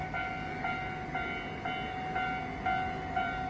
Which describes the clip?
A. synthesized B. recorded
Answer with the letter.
B